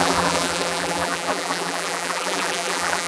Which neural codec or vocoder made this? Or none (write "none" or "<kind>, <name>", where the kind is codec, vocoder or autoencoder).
vocoder, BigVGAN v2